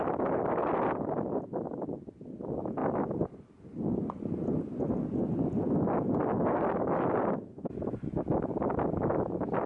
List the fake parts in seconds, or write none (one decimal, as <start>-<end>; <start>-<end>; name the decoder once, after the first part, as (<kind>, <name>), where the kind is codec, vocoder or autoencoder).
none

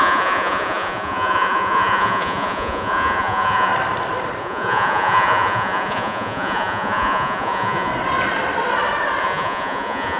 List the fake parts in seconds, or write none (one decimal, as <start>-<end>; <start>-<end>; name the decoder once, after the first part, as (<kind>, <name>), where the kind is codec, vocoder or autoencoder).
0.0-3.7 (vocoder, Vocos); 4.4-7.9; 9.2-10.2

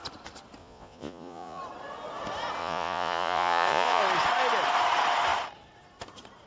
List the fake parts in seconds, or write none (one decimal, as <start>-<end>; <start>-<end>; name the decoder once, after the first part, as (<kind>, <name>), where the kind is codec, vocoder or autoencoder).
0.6-1.6 (vocoder, Vocos); 2.6-4.0

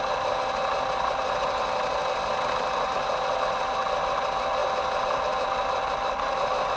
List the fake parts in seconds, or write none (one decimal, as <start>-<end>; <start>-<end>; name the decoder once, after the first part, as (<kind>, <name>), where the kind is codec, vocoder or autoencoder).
none

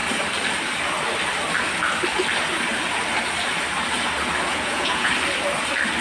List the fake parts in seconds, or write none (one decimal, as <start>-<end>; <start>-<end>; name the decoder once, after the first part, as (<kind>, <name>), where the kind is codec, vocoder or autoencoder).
4.5-5.1 (vocoder, Vocos)